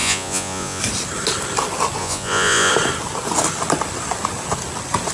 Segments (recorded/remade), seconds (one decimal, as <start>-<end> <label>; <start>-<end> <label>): 0.0-0.8 remade; 0.8-2.0 recorded; 2.0-2.7 remade; 2.7-5.1 recorded